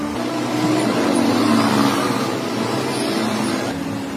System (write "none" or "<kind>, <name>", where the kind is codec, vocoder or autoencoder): none